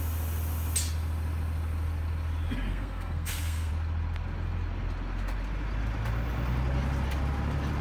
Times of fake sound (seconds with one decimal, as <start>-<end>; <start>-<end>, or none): 2.7-3.7